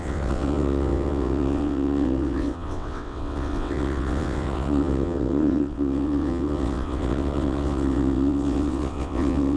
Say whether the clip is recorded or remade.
remade